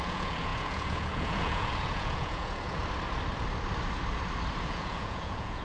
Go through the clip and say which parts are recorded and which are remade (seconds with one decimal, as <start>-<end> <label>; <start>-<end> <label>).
0.0-2.8 remade; 2.8-4.6 recorded; 4.6-5.6 remade